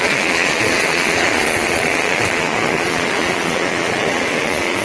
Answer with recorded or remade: remade